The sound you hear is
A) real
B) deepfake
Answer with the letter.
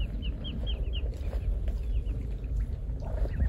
A